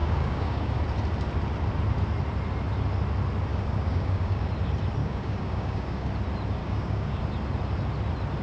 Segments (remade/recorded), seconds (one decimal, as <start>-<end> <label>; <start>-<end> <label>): 0.0-0.8 remade; 0.8-3.5 recorded; 3.5-4.5 remade; 4.5-5.0 recorded; 5.0-6.1 remade; 6.1-6.6 recorded; 6.6-7.2 remade; 7.2-8.4 recorded